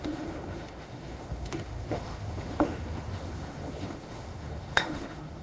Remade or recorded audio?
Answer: remade